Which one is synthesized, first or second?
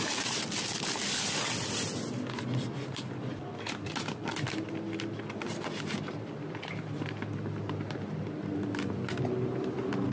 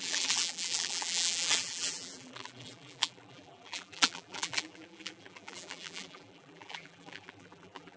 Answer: second